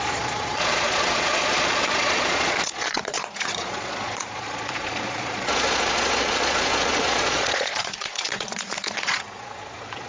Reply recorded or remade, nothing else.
remade